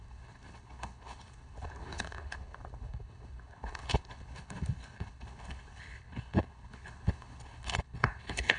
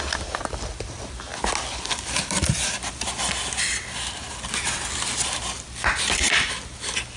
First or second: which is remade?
first